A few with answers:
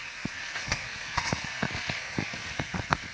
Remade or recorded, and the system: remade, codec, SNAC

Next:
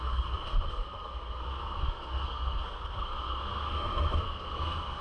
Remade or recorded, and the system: remade, codec, SNAC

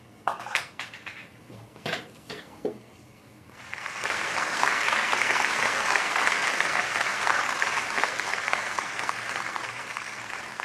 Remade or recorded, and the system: remade, codec, SNAC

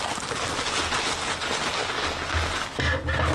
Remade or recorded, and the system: recorded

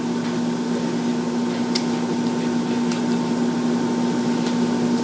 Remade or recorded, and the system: recorded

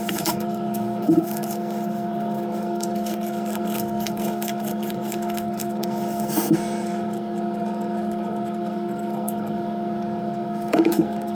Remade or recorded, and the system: remade, codec, SNAC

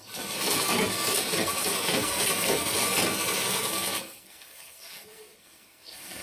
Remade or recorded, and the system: remade, codec, SNAC